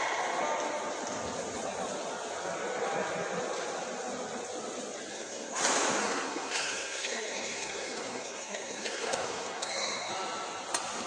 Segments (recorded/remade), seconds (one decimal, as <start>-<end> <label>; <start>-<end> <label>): 0.0-5.1 recorded; 5.1-5.6 remade; 5.6-6.0 recorded; 6.0-10.1 remade; 10.1-11.1 recorded